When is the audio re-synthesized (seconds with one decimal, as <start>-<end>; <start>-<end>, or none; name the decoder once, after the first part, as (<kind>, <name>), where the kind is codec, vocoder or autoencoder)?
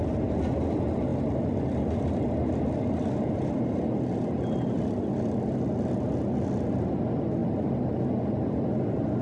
none